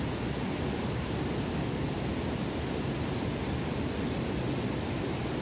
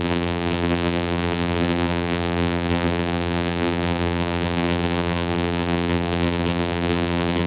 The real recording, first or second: first